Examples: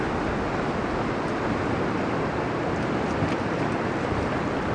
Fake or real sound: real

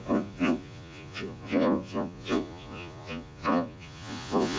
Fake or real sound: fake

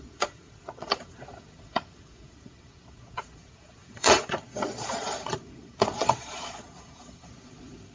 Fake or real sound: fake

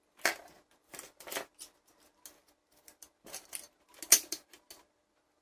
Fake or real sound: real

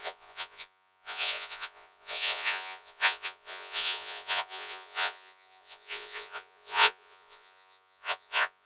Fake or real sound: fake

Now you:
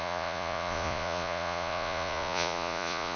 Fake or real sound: fake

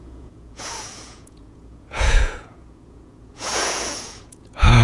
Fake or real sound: fake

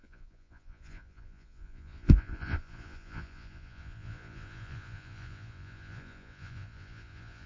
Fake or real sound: fake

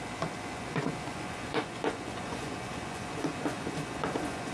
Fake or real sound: fake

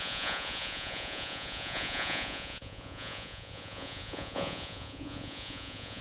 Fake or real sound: fake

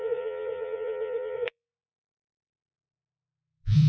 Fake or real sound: fake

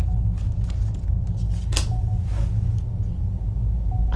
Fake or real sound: real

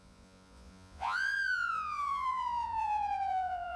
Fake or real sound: fake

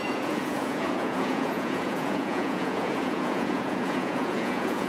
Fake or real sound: fake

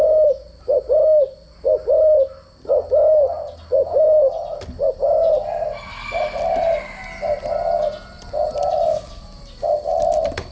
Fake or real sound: real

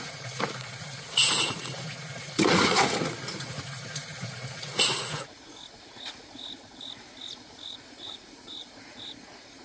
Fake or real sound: fake